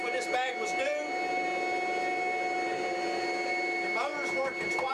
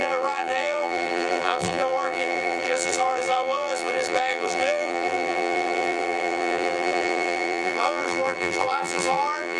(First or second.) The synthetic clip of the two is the second